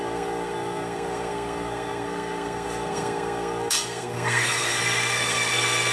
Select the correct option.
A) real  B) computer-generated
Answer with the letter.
B